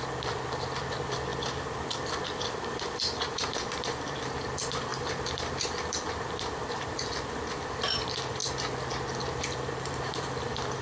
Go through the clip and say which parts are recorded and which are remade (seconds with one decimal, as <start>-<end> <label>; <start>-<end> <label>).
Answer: 0.0-8.4 remade; 8.4-9.3 recorded; 9.3-10.8 remade